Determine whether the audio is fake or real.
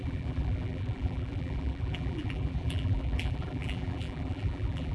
fake